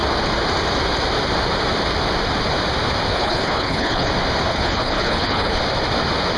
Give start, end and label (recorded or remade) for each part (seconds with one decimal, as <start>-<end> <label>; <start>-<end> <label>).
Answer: 0.0-3.1 recorded; 3.1-4.1 remade; 4.1-4.5 recorded; 4.5-5.6 remade; 5.6-6.4 recorded